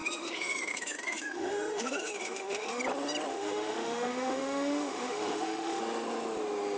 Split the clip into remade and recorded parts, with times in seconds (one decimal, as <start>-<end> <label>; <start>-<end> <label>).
0.0-2.8 remade; 2.8-3.3 recorded; 3.3-5.8 remade; 5.8-6.8 recorded